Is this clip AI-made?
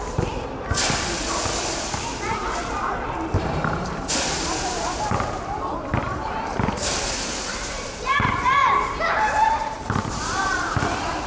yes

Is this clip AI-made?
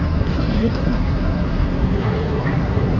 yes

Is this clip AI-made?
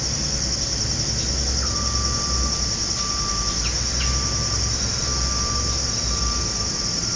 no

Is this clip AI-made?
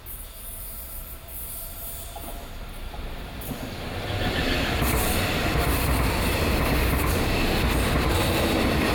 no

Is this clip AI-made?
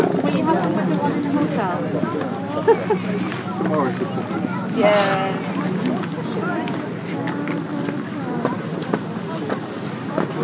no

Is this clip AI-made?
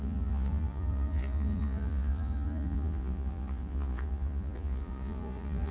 yes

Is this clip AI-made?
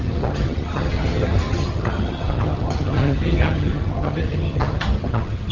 yes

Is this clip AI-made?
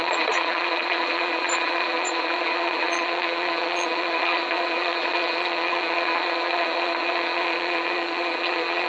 yes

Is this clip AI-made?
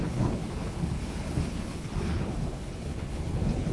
yes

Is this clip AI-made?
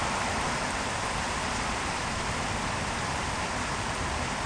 yes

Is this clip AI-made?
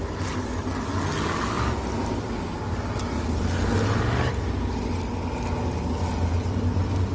no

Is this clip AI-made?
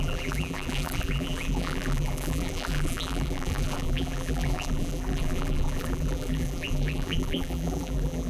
yes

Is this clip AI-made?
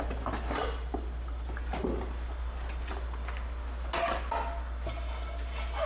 no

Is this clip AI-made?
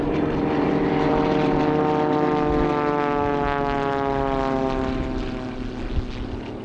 no